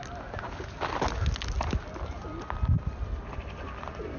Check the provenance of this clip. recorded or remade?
recorded